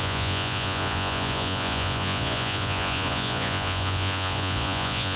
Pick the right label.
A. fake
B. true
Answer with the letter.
A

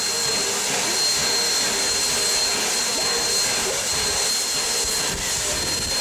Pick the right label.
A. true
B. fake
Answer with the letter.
A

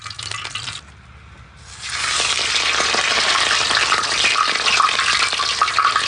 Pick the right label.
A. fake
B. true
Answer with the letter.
B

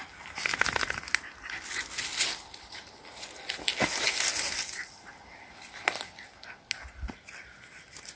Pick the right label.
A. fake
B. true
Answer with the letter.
B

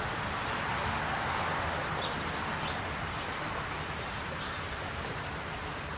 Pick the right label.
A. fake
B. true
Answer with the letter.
B